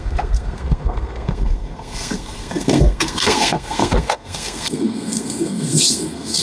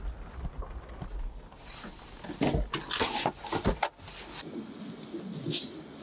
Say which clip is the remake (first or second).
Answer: first